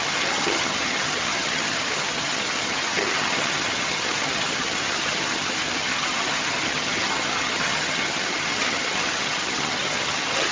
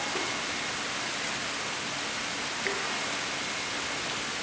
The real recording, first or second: second